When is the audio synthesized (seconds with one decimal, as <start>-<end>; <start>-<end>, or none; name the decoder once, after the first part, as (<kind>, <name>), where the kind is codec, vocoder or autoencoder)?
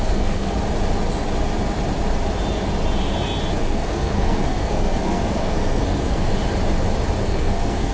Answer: 0.0-0.5 (codec, SNAC); 3.6-6.3; 7.2-7.9